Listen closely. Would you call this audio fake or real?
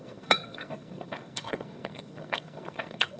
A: fake